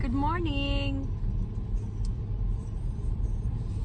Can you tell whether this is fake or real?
real